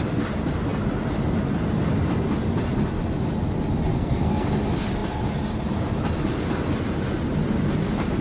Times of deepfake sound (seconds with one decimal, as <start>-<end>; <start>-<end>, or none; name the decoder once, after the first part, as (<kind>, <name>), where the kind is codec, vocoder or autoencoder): 3.9-4.5 (codec, SNAC)